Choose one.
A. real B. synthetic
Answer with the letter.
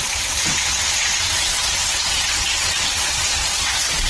B